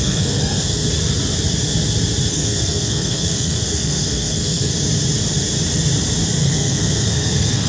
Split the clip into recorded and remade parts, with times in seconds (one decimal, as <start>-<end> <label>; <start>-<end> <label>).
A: 0.0-0.9 remade; 0.9-2.3 recorded; 2.3-4.7 remade; 4.7-6.4 recorded; 6.4-7.7 remade